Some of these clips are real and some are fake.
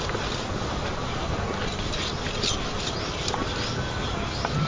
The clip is real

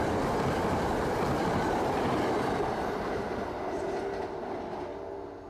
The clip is real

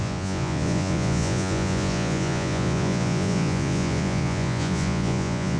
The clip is fake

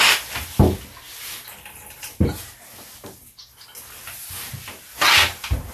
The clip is real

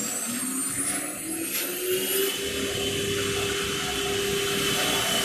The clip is real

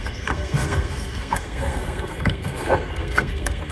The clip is fake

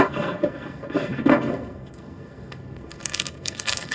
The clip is fake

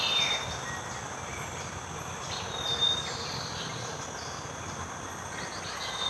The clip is real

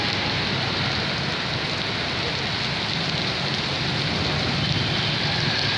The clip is real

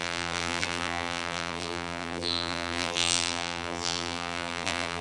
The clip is fake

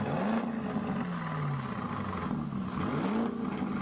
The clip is real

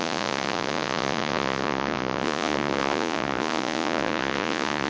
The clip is fake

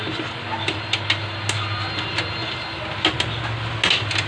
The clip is real